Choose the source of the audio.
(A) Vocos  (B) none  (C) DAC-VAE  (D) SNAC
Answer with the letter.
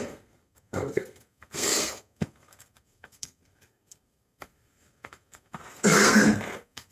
D